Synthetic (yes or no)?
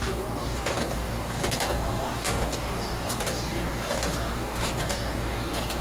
yes